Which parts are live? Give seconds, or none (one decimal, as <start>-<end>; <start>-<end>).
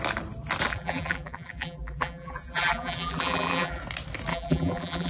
0.0-0.7; 3.8-4.3